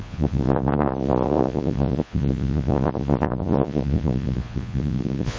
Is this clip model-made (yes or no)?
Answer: yes